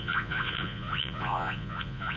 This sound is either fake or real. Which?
fake